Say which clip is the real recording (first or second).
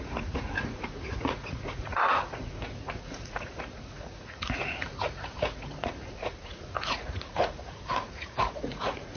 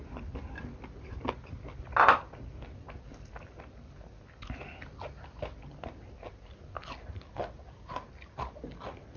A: second